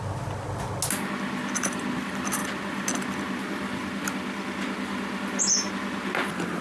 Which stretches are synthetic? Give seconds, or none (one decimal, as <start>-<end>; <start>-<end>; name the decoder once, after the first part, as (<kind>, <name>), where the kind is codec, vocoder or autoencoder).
none

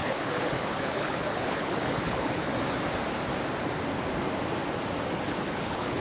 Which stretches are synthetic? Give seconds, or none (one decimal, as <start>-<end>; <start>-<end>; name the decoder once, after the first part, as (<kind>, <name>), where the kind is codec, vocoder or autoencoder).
0.0-2.5 (codec, HILCodec); 5.3-6.0

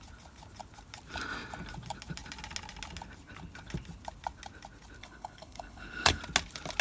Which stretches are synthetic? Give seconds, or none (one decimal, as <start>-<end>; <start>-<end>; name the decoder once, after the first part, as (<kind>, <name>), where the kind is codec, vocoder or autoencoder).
5.0-6.2 (codec, HILCodec)

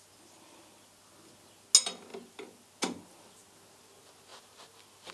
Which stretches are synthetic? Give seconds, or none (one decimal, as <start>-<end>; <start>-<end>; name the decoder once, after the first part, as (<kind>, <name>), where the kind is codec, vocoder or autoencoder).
none

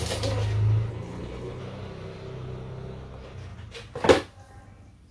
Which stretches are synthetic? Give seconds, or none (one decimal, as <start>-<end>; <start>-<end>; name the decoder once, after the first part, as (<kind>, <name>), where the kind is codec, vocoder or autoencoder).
0.9-1.6 (codec, HILCodec)

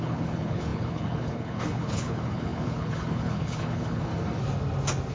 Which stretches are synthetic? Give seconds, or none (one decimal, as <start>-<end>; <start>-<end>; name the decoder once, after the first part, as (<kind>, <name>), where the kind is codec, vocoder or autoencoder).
0.0-4.1 (codec, HILCodec)

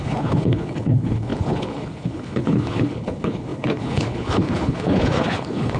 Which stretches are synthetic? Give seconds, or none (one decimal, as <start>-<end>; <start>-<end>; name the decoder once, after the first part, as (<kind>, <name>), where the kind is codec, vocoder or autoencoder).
0.0-5.8 (codec, HILCodec)